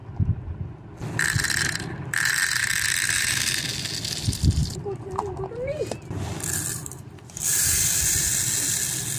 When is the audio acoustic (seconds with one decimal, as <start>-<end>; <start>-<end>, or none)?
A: 0.0-9.2